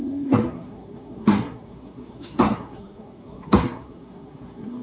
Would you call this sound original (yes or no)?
no